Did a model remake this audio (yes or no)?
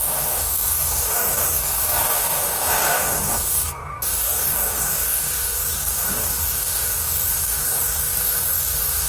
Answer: yes